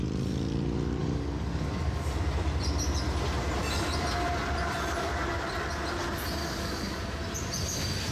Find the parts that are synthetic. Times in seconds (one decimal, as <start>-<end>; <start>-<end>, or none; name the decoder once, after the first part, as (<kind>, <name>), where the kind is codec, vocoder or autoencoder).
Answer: 1.0-2.0 (codec, DAC); 6.4-7.0